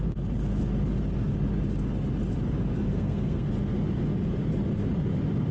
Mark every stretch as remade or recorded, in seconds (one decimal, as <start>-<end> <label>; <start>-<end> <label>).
0.0-2.9 recorded; 2.9-3.5 remade; 3.5-5.5 recorded

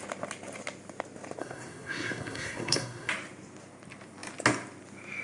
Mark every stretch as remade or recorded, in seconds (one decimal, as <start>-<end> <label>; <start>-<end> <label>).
0.0-1.4 recorded; 1.4-3.1 remade; 3.1-5.2 recorded

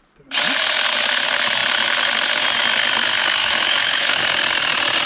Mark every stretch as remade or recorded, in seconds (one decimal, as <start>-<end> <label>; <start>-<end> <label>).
0.0-3.4 recorded; 3.4-4.2 remade; 4.2-5.1 recorded

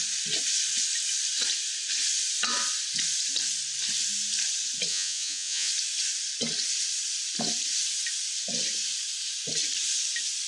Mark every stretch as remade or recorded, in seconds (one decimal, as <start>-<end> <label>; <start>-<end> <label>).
0.0-4.9 recorded; 4.9-5.7 remade; 5.7-10.5 recorded